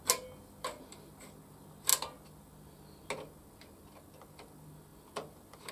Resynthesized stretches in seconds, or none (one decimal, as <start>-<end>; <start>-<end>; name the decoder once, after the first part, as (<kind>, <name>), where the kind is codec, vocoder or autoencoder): none

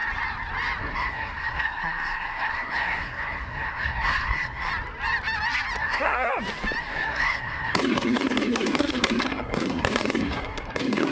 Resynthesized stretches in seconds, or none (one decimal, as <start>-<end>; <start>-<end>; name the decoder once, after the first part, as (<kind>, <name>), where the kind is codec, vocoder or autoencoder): 0.8-4.7 (codec, SNAC); 5.8-6.3; 6.8-11.1